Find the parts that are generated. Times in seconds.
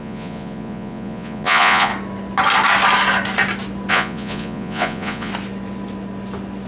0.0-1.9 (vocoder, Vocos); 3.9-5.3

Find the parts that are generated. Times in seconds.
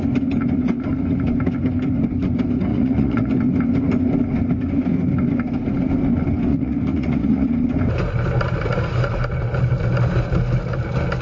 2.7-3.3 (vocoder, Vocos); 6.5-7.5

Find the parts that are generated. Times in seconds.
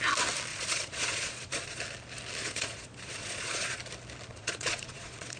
0.5-1.8 (vocoder, Vocos); 2.4-3.8; 4.3-5.4